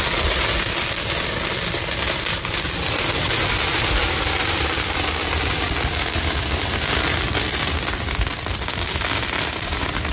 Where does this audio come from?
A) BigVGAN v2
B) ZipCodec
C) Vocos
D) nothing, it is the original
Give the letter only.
D